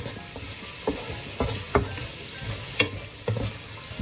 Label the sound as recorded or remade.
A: recorded